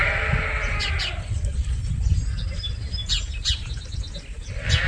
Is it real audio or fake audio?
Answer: real